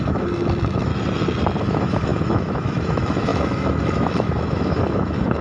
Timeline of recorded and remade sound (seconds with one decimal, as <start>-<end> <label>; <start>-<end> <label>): 0.0-0.9 remade; 0.9-1.6 recorded; 1.6-5.4 remade